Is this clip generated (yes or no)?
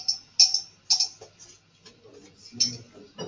no